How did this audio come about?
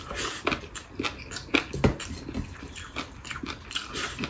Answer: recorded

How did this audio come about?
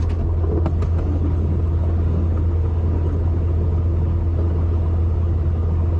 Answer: recorded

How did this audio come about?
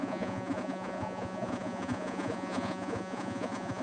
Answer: remade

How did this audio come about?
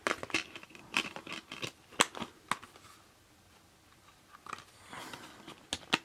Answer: recorded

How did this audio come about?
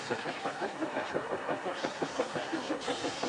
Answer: remade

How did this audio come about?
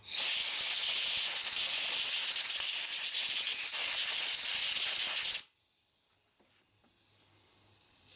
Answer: recorded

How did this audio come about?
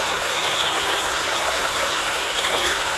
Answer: remade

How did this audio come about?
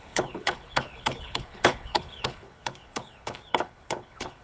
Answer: remade